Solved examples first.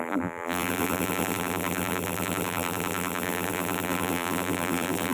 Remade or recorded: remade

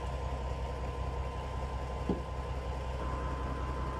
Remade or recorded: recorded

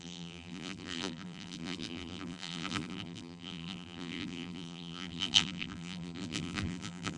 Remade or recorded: remade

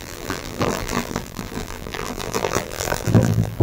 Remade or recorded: remade